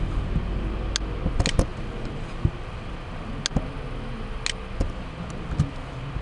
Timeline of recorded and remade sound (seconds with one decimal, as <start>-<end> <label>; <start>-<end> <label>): 0.0-6.2 recorded